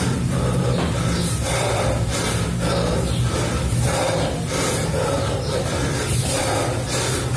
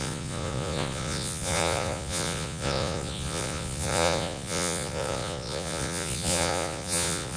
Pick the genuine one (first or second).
first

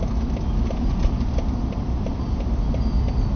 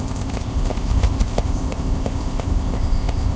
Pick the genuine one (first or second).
first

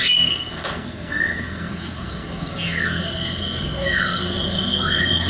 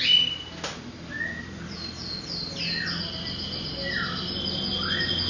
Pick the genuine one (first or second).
second